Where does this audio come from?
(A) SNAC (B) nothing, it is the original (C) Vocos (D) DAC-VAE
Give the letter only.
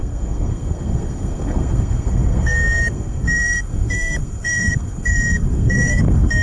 A